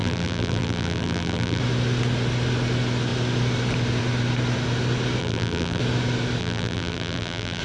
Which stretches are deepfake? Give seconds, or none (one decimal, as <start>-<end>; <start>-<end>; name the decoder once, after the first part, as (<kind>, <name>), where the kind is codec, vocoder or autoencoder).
0.0-1.6 (vocoder, BigVGAN v2); 5.2-5.8; 6.4-7.6